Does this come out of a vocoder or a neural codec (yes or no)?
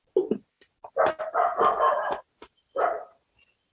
no